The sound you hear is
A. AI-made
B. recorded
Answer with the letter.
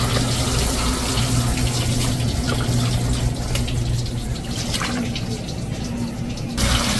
B